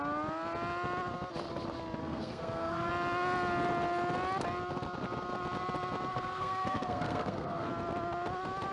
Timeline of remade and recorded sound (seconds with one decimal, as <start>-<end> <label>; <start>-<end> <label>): 0.0-2.0 recorded; 2.0-2.9 remade; 2.9-6.1 recorded; 6.1-7.7 remade; 7.7-8.7 recorded